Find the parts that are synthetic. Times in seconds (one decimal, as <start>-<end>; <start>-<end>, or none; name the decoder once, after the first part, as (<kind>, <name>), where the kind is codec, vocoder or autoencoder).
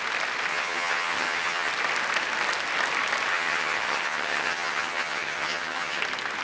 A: 0.5-1.7 (vocoder, HiFi-GAN); 3.3-6.0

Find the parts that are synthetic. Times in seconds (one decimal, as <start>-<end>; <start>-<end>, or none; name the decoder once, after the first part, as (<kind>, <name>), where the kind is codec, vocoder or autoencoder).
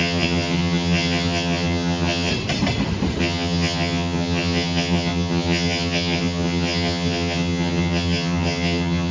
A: 0.0-2.3 (vocoder, HiFi-GAN); 3.2-9.1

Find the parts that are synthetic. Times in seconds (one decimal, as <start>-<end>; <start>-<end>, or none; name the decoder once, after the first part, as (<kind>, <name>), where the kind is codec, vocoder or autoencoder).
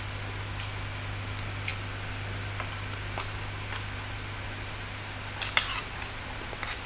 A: none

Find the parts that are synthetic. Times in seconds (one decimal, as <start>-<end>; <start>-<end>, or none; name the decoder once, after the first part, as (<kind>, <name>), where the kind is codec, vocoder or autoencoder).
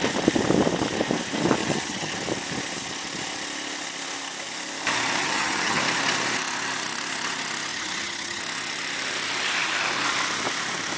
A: 1.6-2.1 (vocoder, HiFi-GAN); 5.2-5.8; 7.7-8.4